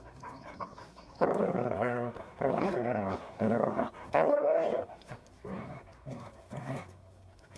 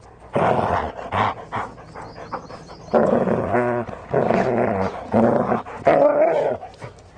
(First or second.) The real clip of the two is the second